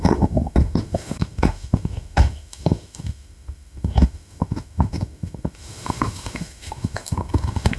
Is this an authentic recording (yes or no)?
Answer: no